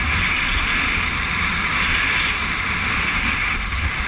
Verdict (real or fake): fake